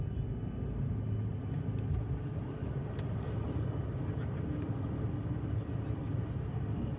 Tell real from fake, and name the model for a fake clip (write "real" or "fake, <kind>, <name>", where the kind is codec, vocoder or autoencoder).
real